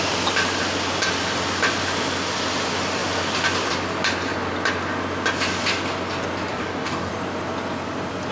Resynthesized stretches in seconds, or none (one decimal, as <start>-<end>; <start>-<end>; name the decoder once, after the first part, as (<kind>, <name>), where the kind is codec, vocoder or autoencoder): 6.5-7.1 (codec, DAC)